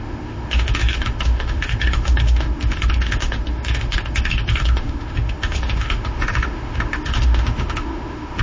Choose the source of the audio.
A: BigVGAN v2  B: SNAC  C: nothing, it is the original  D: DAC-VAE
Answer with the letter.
D